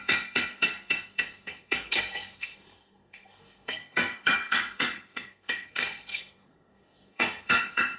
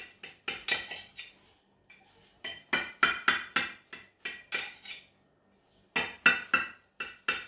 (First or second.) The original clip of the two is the second